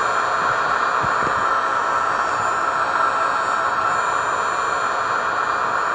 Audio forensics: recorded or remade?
recorded